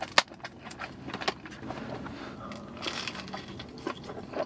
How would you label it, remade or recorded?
recorded